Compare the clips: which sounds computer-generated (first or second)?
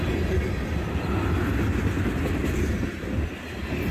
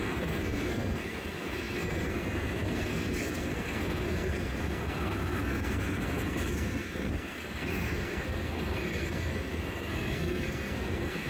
second